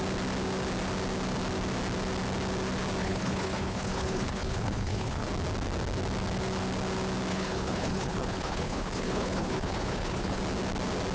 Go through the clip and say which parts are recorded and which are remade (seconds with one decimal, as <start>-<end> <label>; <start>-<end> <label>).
0.0-3.0 recorded; 3.0-5.3 remade; 5.3-7.3 recorded; 7.3-10.4 remade; 10.4-11.1 recorded